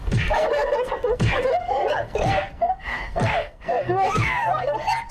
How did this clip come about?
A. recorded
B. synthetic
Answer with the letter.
B